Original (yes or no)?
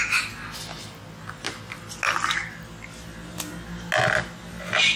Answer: yes